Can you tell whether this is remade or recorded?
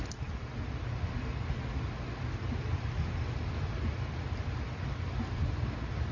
recorded